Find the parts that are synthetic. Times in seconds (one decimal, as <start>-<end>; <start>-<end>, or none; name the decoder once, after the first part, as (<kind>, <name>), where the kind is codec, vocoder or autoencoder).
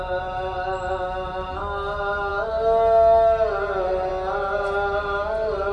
none